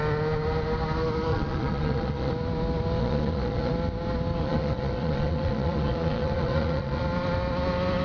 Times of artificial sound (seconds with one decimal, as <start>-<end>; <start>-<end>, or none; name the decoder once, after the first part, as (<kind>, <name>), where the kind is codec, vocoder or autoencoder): 1.3-2.3 (vocoder, Vocos); 3.0-3.7; 4.4-7.0